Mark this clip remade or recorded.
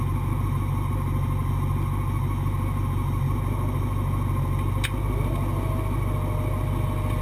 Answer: recorded